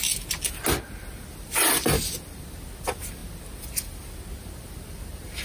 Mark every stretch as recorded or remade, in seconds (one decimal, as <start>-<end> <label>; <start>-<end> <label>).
0.0-5.4 recorded